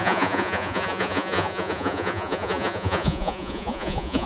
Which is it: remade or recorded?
remade